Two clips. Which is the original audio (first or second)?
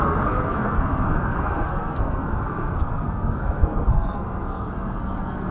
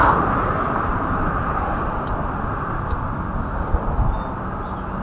second